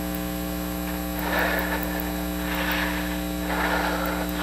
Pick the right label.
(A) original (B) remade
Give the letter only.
A